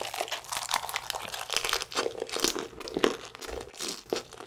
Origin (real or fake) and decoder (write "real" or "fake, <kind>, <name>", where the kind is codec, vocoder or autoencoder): real